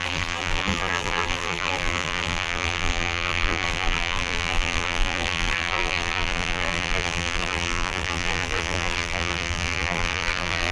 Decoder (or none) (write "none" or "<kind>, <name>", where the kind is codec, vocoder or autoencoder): vocoder, BigVGAN v2